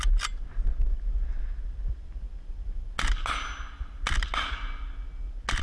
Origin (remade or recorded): recorded